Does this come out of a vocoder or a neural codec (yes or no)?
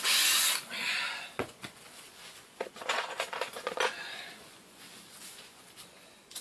yes